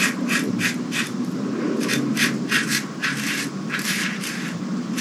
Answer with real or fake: fake